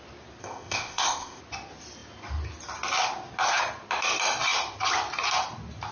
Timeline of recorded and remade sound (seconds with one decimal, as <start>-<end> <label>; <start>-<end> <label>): 0.0-0.4 recorded; 0.4-1.4 remade; 1.4-5.9 recorded